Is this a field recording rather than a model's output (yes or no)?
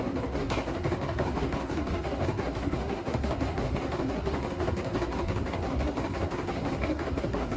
no